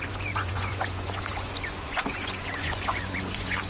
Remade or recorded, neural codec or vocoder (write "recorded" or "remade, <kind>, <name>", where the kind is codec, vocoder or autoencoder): remade, vocoder, Vocos